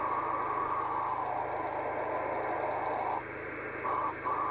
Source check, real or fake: real